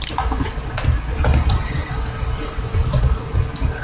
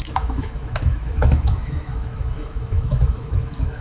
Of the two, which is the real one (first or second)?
first